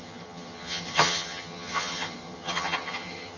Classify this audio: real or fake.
fake